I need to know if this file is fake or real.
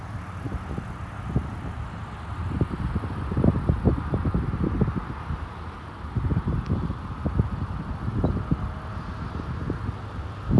real